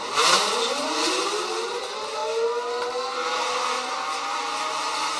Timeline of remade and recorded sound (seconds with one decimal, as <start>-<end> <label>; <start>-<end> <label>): 0.0-2.2 remade; 2.2-3.3 recorded; 3.3-5.2 remade